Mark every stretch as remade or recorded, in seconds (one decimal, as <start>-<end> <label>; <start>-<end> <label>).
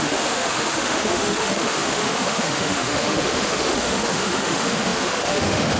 0.0-5.8 remade